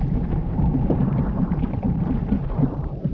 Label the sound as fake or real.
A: fake